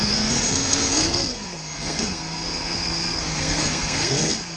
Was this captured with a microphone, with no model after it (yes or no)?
no